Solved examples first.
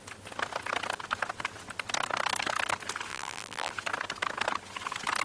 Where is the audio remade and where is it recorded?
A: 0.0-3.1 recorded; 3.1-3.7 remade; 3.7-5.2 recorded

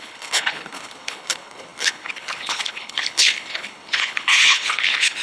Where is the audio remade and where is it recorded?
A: 0.0-5.2 remade

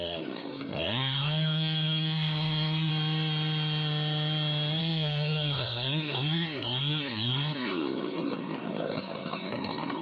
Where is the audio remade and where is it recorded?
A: 0.0-2.9 remade; 2.9-4.8 recorded; 4.8-10.0 remade